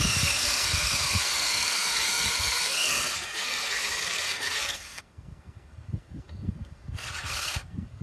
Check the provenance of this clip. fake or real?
fake